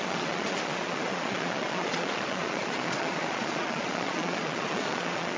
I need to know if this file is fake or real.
fake